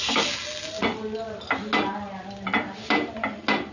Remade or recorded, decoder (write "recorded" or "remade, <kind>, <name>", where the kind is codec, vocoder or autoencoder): recorded